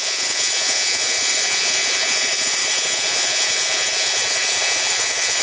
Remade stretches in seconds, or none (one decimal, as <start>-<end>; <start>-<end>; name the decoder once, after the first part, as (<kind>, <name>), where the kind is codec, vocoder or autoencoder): 0.0-5.4 (vocoder, Vocos)